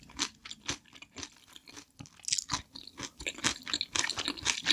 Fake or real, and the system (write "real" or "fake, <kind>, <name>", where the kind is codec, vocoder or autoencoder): real